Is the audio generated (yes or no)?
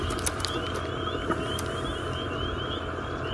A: no